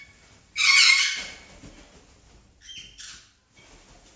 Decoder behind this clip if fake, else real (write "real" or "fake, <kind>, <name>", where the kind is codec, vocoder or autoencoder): real